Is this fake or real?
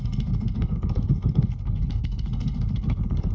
fake